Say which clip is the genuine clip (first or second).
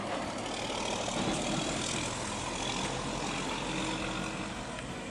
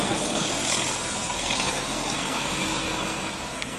first